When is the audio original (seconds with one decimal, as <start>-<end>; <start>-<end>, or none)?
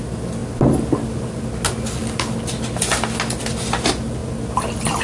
0.0-5.0